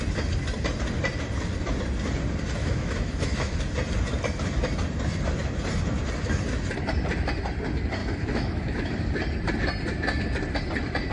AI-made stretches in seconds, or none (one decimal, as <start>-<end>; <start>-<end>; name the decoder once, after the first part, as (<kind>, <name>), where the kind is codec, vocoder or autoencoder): 2.6-3.6 (autoencoder, DAC-VAE); 8.0-8.9